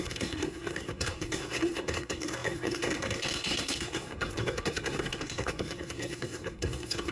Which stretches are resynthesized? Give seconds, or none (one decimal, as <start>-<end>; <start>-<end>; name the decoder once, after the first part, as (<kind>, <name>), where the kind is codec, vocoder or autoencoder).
0.0-7.1 (codec, SNAC)